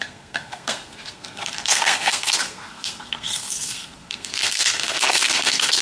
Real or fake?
fake